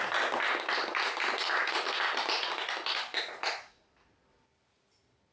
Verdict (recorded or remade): recorded